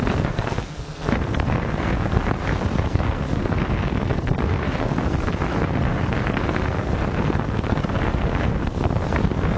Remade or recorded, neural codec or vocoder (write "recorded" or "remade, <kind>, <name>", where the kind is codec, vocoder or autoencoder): remade, codec, SNAC